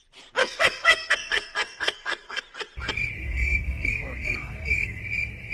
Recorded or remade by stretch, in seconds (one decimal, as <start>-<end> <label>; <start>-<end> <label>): 0.0-0.4 recorded; 0.4-2.4 remade; 2.4-3.2 recorded; 3.2-5.0 remade; 5.0-5.5 recorded